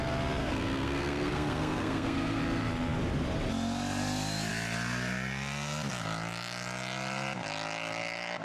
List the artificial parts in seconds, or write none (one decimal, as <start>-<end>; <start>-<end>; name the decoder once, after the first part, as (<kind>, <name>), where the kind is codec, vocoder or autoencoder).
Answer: 0.4-2.4 (codec, SNAC)